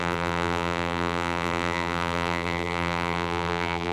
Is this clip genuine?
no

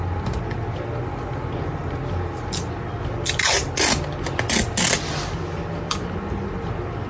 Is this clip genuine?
yes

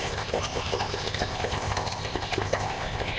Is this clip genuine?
no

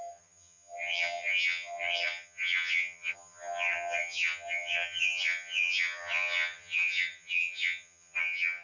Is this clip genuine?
no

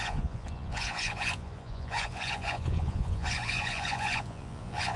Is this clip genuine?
no